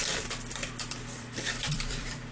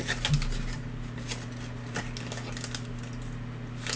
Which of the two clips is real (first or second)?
second